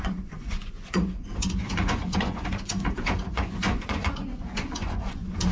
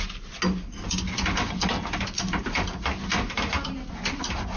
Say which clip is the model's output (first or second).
first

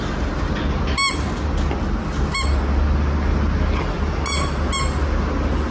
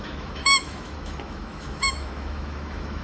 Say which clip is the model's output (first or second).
second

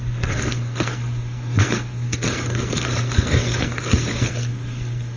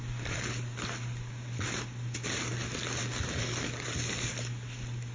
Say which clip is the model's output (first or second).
first